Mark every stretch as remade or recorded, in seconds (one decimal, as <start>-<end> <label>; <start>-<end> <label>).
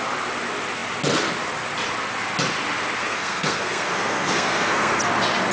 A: 0.0-3.0 recorded; 3.0-5.0 remade; 5.0-5.5 recorded